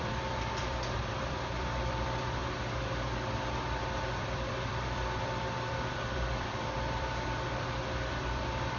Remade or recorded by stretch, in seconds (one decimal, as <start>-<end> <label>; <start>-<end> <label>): 0.0-2.4 remade; 2.4-3.2 recorded; 3.2-8.8 remade

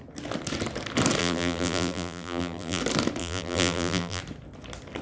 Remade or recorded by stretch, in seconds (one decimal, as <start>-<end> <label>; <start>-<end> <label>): 0.0-1.2 recorded; 1.2-2.8 remade; 2.8-3.2 recorded; 3.2-4.2 remade; 4.2-5.0 recorded

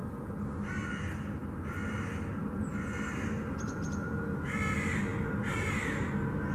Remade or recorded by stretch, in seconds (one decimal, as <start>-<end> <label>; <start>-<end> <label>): 0.0-5.1 recorded; 5.1-5.7 remade; 5.7-6.5 recorded

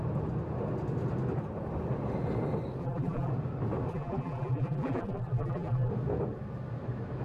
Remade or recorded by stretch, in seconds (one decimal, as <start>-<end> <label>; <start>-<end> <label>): 0.0-2.8 recorded; 2.8-3.3 remade; 3.3-3.9 recorded; 3.9-5.9 remade; 5.9-7.2 recorded

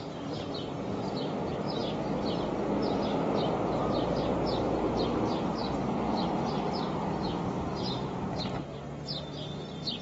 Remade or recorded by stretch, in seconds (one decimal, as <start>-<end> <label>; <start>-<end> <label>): 0.0-10.0 recorded